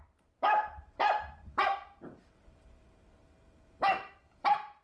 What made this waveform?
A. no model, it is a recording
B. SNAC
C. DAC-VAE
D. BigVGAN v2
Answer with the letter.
D